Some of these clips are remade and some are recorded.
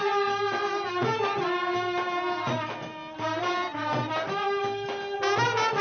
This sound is recorded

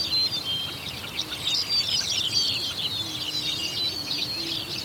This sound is recorded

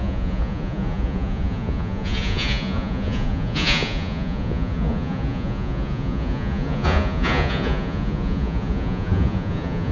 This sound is remade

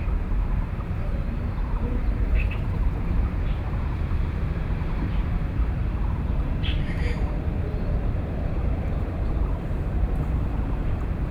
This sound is remade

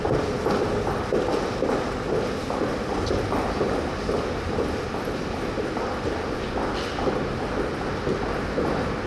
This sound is recorded